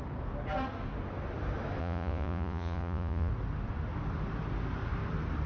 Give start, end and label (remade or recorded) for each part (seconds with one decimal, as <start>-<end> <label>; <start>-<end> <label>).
0.0-1.8 recorded; 1.8-3.3 remade; 3.3-5.5 recorded